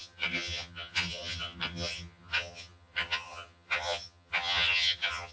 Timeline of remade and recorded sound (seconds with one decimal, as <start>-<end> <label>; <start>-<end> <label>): 0.0-5.3 remade